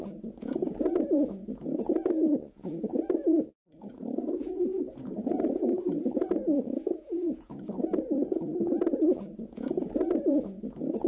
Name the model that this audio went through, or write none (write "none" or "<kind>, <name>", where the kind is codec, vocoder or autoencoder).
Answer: vocoder, Vocos